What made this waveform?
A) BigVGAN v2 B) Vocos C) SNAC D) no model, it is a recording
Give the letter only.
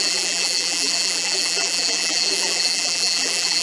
A